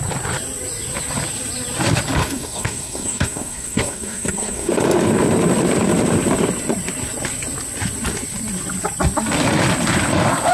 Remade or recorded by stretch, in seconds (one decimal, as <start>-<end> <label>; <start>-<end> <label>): 0.0-2.2 recorded; 2.2-4.7 remade; 4.7-10.5 recorded